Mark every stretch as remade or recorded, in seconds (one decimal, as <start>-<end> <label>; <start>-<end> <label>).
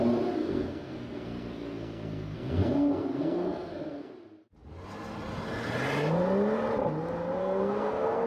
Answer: 0.0-0.4 recorded; 0.4-4.1 remade; 4.1-7.4 recorded; 7.4-8.3 remade